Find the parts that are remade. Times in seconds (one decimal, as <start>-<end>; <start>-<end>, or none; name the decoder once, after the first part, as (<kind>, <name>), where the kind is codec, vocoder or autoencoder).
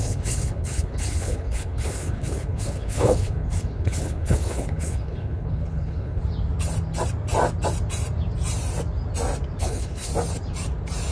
0.0-6.2 (codec, HILCodec); 9.6-10.1